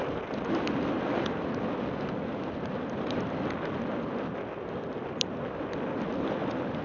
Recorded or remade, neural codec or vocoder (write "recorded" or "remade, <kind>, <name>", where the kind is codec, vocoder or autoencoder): recorded